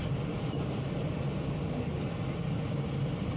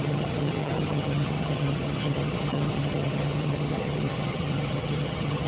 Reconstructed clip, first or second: second